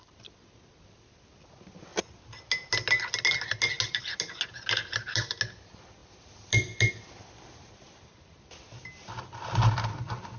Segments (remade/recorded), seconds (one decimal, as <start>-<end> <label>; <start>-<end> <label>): 0.0-10.4 recorded